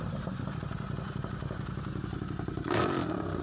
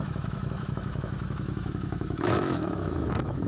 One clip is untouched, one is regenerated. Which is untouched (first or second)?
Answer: first